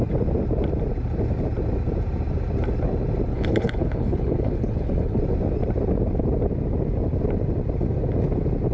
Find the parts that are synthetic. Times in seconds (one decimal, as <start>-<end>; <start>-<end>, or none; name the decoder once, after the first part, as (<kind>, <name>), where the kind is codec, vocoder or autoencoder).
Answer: 3.3-5.2 (codec, HILCodec)